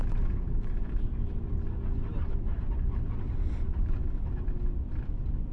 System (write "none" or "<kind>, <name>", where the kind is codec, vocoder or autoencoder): none